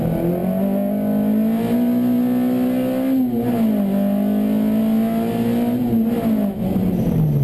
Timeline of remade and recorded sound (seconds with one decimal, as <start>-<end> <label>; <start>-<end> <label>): 0.0-7.4 recorded